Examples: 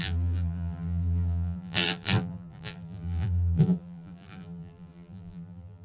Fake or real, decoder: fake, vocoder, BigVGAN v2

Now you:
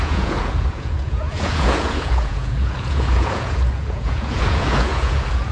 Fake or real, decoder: fake, vocoder, Vocos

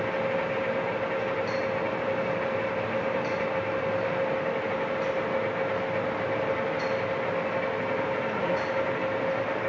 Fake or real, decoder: fake, vocoder, BigVGAN v2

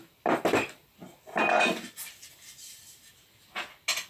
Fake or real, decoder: real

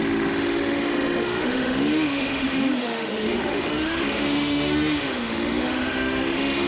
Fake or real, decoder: fake, autoencoder, DAC-VAE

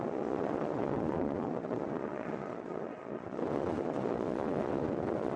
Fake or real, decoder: fake, vocoder, Vocos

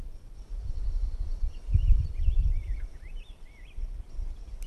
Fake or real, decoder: fake, vocoder, BigVGAN v2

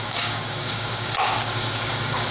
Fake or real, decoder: fake, codec, DAC